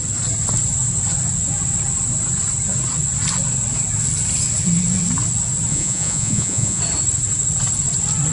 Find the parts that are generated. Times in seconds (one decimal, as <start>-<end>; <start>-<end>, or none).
5.7-6.8